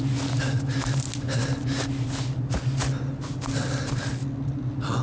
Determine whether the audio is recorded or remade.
recorded